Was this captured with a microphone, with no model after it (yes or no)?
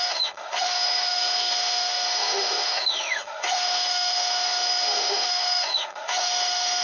no